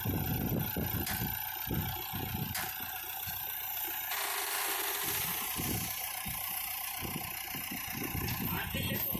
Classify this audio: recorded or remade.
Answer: recorded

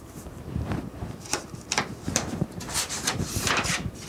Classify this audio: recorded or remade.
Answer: remade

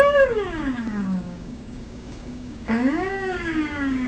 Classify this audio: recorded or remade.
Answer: remade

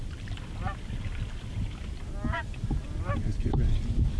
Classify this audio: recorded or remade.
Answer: recorded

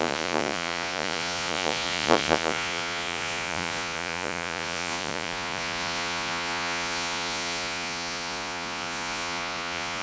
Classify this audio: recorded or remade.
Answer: remade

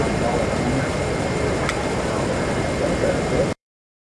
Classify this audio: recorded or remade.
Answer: remade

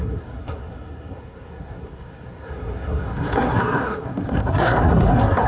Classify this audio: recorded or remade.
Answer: remade